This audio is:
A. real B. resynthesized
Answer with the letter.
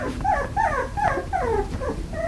B